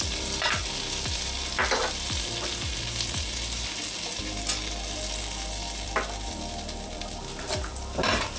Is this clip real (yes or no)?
no